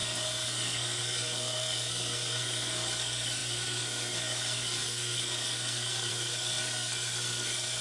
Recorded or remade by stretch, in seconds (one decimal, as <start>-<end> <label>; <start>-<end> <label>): 0.0-7.8 remade

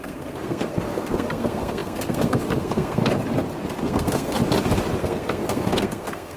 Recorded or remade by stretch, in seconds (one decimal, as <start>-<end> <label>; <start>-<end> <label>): 0.0-3.0 remade; 3.0-3.8 recorded; 3.8-4.4 remade; 4.4-5.0 recorded; 5.0-6.4 remade

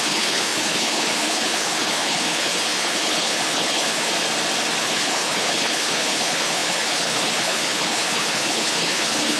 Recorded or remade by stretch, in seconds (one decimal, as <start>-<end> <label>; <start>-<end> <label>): 0.0-4.1 remade; 4.1-4.8 recorded; 4.8-9.4 remade

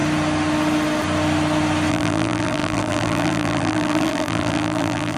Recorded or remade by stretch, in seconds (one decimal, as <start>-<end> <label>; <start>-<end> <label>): 0.0-1.9 recorded; 1.9-5.2 remade